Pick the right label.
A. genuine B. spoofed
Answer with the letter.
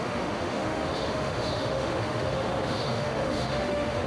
B